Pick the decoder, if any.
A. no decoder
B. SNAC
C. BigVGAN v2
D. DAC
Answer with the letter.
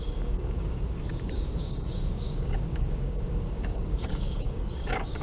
D